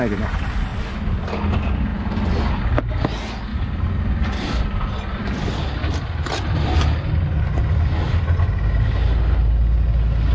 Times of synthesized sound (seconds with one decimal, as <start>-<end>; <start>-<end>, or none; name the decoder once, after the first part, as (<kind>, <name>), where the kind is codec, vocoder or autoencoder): 3.5-8.4 (vocoder, BigVGAN v2)